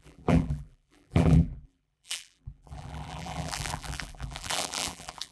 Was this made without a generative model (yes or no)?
no